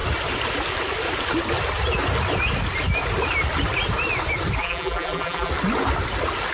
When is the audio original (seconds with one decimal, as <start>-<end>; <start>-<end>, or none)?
0.0-4.6; 5.5-6.5